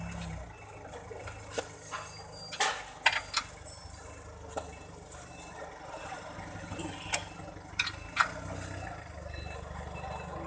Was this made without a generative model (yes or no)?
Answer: yes